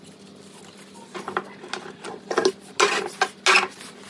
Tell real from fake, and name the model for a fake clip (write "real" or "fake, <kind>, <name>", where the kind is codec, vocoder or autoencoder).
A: real